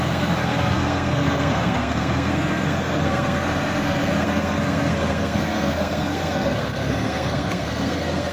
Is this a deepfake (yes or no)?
yes